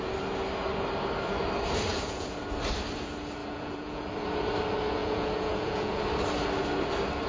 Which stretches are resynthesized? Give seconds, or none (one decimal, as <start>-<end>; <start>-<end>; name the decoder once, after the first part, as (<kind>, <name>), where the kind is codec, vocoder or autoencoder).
1.9-2.4 (vocoder, Vocos); 3.4-4.1; 5.0-6.0